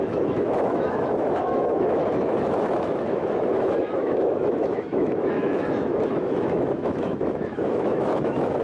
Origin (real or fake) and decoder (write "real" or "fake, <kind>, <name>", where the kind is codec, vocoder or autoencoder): fake, autoencoder, DAC-VAE